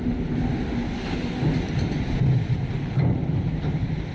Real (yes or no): yes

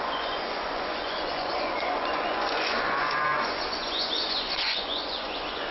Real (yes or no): no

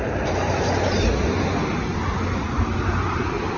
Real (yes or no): yes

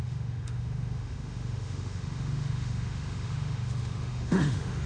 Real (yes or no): no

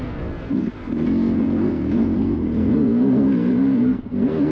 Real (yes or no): no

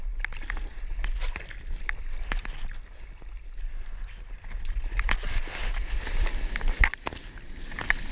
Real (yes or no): yes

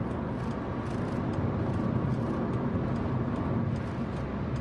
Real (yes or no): yes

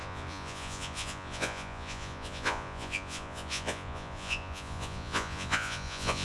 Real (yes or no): no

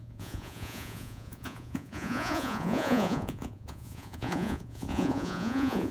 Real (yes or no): no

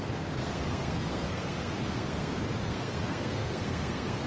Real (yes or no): no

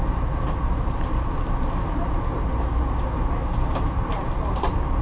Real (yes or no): yes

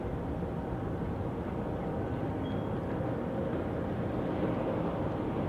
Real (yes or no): yes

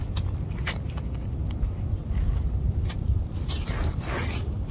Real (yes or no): yes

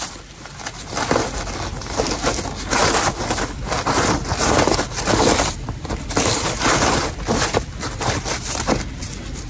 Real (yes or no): no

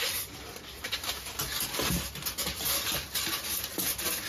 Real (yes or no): yes